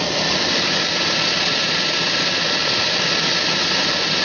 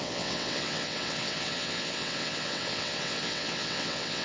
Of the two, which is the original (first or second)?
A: first